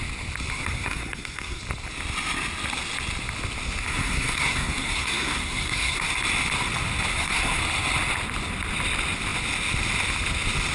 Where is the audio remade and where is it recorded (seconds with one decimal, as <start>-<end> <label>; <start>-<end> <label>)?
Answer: 0.0-0.5 recorded; 0.5-1.6 remade; 1.6-3.9 recorded; 3.9-6.1 remade; 6.1-7.1 recorded; 7.1-7.6 remade; 7.6-10.7 recorded